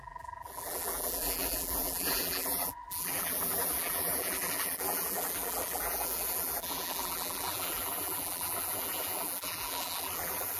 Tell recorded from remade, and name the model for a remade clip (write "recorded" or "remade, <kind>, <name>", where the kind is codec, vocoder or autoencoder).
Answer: remade, vocoder, BigVGAN v2